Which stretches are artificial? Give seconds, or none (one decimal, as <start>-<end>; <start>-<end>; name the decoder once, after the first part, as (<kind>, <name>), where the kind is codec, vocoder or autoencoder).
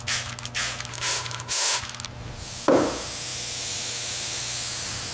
0.9-1.8 (autoencoder, DAC-VAE)